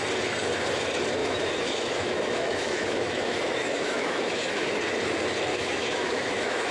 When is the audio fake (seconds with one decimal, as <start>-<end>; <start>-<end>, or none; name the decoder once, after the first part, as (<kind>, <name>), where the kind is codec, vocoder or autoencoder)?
1.2-4.8 (autoencoder, DAC-VAE); 5.5-6.7